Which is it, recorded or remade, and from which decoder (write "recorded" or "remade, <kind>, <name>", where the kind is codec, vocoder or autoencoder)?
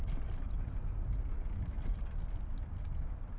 recorded